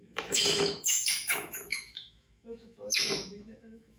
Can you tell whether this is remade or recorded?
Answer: remade